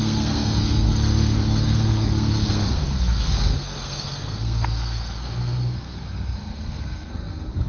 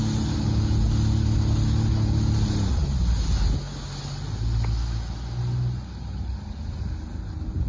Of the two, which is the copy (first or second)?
first